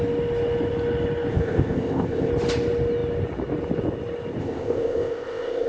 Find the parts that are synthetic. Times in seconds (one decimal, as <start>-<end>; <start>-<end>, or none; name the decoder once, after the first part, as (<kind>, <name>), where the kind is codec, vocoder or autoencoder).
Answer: 1.3-2.3 (codec, ZipCodec); 4.4-5.7